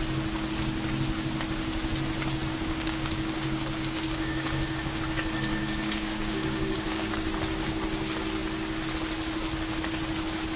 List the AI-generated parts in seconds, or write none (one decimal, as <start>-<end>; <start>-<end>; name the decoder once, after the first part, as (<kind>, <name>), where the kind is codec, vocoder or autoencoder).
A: 2.5-5.0 (codec, DAC); 5.5-7.1